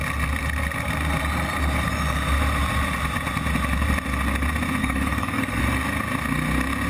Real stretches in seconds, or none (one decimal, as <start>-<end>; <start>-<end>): 0.0-4.8; 5.6-6.9

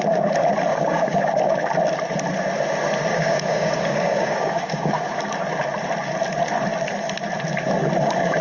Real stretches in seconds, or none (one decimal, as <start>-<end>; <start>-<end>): 0.0-0.7; 1.2-3.1; 5.2-8.4

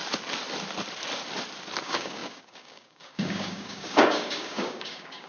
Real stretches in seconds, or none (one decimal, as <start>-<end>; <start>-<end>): 0.0-1.8

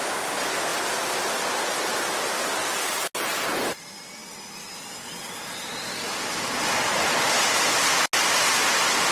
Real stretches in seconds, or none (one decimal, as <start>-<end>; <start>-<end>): 0.0-9.1

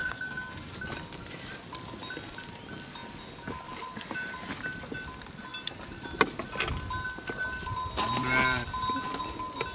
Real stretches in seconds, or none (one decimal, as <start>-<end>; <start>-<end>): 0.7-9.7

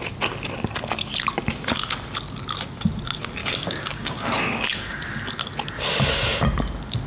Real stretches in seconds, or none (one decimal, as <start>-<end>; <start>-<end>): 0.0-3.4; 5.0-7.1